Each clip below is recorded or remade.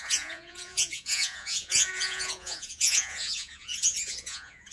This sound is remade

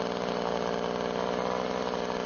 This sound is recorded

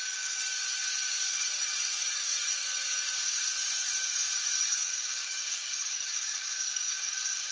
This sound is remade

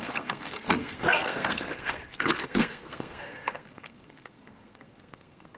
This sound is remade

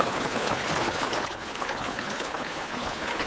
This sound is remade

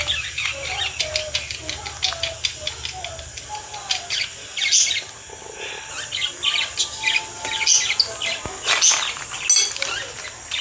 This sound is recorded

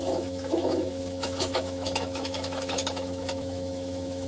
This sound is remade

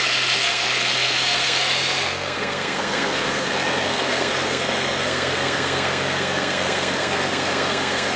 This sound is remade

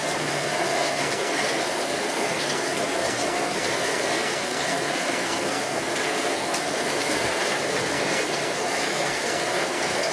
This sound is remade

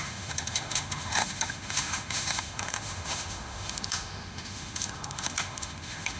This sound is remade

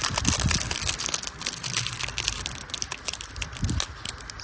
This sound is recorded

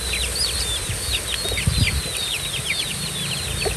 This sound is recorded